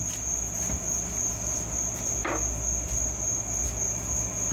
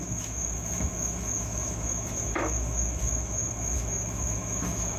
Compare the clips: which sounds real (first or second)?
first